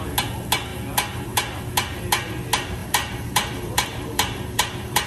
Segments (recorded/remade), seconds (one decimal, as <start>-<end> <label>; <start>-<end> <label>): 0.0-2.8 recorded; 2.8-5.1 remade